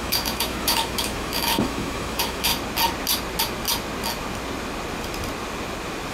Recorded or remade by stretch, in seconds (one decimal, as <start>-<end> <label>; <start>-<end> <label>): 0.0-2.5 remade; 2.5-6.1 recorded